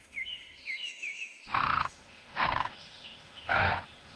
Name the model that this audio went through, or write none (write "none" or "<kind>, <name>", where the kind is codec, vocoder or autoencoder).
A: autoencoder, DAC-VAE